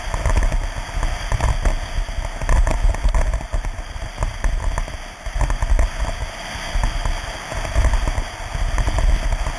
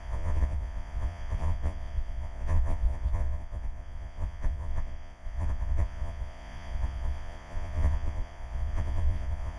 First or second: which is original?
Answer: first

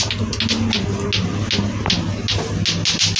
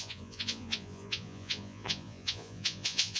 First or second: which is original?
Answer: first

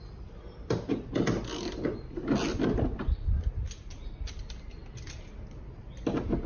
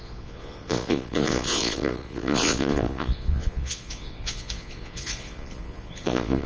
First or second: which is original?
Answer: first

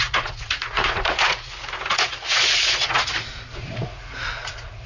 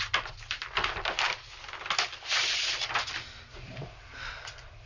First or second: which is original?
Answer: second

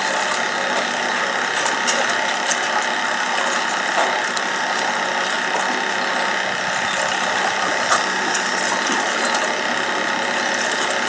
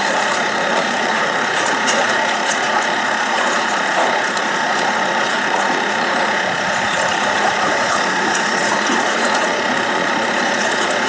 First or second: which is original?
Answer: first